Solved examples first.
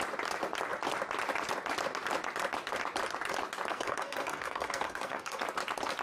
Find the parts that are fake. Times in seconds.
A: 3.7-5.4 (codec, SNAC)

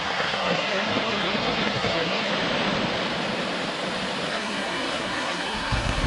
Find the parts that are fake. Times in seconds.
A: 0.0-2.3 (codec, SNAC); 4.3-6.1

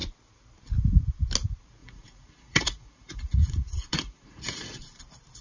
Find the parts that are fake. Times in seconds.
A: 1.8-5.0 (vocoder, Vocos)

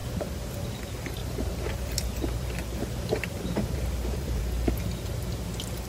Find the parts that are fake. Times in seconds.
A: 0.0-0.6 (vocoder, BigVGAN v2); 1.2-4.4